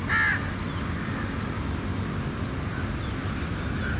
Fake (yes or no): no